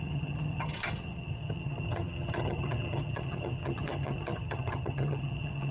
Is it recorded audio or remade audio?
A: remade